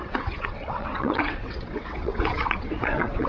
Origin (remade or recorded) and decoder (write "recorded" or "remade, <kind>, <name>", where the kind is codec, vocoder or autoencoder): remade, vocoder, WaveNeXt